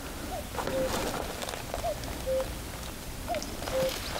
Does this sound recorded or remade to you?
recorded